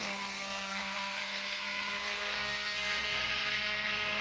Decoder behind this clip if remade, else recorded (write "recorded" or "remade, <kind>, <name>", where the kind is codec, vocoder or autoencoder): remade, codec, SNAC